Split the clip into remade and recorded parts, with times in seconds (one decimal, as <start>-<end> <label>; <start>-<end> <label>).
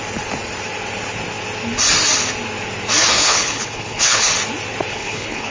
0.0-3.0 recorded; 3.0-4.3 remade; 4.3-4.9 recorded; 4.9-5.5 remade